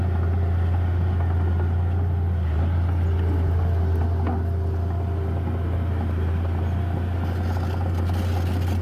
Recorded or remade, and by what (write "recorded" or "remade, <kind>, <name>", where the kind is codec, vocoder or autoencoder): recorded